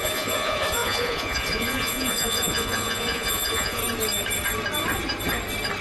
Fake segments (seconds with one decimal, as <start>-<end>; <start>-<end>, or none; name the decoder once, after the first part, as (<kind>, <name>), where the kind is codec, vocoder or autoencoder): 0.0-3.8 (vocoder, Vocos)